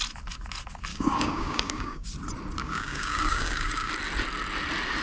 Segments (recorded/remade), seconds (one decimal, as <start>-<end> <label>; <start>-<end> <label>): 0.0-0.9 recorded; 0.9-2.1 remade; 2.1-2.6 recorded; 2.6-3.9 remade; 3.9-5.0 recorded